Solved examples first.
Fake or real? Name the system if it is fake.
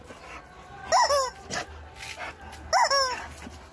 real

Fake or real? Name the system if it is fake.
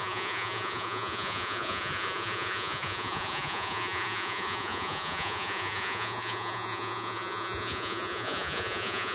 fake, vocoder, Vocos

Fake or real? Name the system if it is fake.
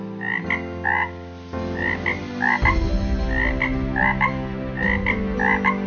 real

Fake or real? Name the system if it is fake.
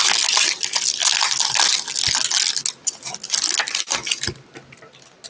real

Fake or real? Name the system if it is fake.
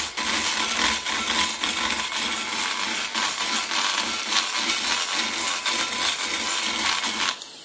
real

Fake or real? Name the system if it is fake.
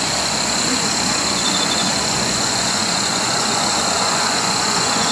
fake, vocoder, Vocos